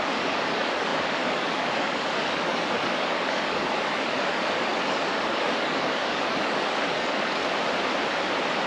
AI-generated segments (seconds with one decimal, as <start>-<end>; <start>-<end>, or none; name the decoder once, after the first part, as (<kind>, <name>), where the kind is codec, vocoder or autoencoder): 0.0-7.4 (codec, DAC)